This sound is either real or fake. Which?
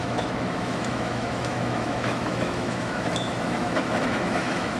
fake